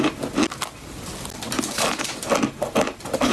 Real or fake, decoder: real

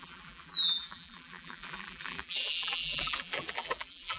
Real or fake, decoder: fake, vocoder, BigVGAN v2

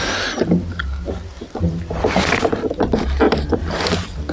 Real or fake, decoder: real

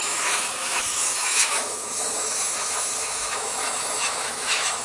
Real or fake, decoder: fake, autoencoder, DAC-VAE